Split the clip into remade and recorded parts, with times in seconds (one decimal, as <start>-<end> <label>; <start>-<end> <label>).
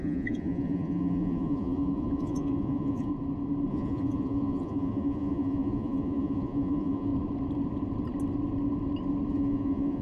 0.0-3.1 remade; 3.1-3.7 recorded; 3.7-7.1 remade; 7.1-9.3 recorded; 9.3-10.0 remade